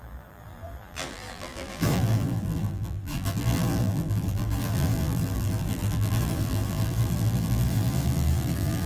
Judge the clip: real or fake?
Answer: fake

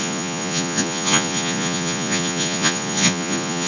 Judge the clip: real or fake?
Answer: fake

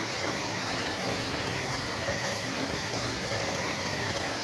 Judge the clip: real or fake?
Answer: fake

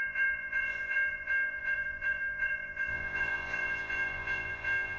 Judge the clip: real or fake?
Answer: fake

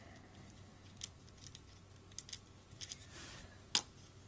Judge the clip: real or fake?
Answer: real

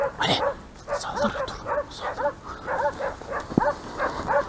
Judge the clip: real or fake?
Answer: real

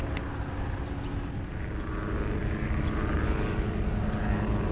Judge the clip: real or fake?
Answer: real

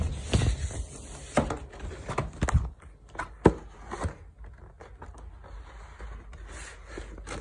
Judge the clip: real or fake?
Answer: real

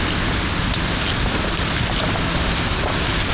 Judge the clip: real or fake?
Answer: real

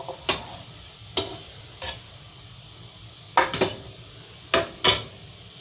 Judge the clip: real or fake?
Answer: real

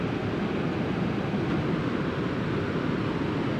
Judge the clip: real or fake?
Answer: real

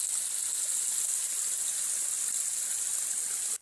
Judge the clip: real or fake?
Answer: real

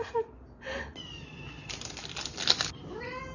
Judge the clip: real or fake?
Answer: real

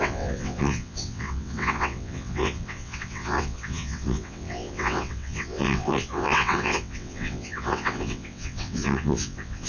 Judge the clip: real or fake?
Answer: fake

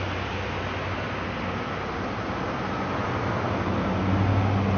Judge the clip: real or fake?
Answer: real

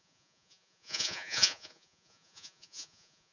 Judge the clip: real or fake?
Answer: fake